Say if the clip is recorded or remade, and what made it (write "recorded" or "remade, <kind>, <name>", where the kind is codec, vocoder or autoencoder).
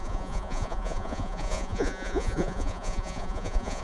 remade, vocoder, Vocos